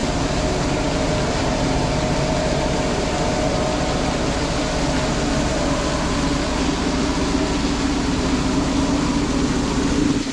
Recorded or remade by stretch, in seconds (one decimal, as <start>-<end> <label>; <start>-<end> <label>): 0.0-10.3 recorded